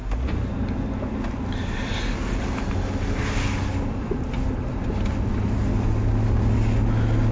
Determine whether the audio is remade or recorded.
recorded